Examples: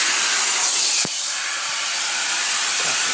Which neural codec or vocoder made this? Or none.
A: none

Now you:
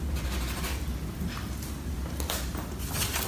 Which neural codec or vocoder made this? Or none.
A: none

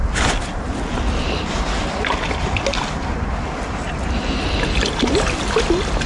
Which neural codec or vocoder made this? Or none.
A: none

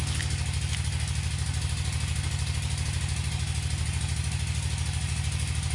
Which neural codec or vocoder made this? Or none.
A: none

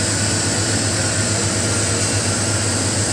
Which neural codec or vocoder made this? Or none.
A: none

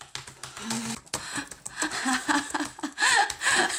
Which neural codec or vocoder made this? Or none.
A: none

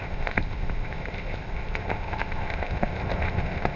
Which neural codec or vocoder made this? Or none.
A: codec, ZipCodec